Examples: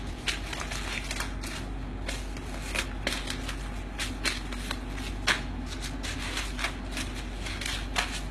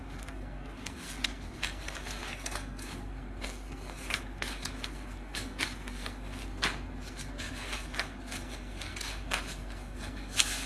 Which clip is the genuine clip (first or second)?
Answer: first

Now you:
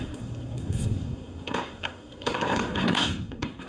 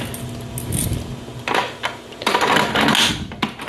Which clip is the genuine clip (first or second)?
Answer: second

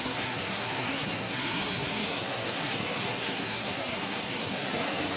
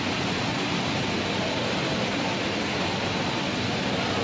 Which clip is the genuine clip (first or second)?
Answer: second